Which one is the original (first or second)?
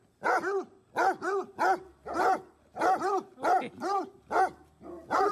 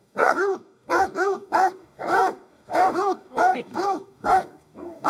first